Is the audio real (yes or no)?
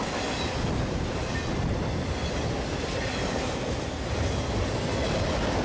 yes